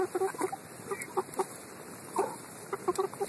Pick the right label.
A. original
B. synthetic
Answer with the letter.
A